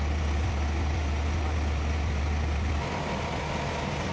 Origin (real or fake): real